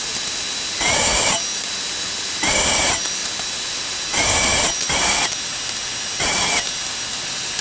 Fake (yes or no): no